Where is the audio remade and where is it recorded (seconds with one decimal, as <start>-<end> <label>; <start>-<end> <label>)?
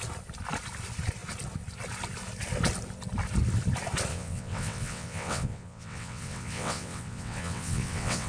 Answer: 0.0-4.1 recorded; 4.1-8.3 remade